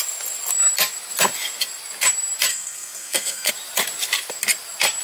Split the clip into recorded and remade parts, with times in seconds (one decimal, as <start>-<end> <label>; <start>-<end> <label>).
0.0-2.5 recorded; 2.5-3.5 remade; 3.5-5.0 recorded